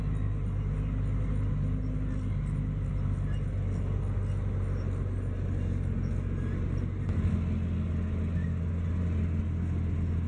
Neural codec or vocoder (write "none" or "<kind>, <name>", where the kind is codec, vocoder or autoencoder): none